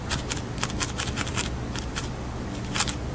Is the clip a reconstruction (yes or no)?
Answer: no